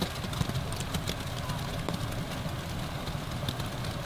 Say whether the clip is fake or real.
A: real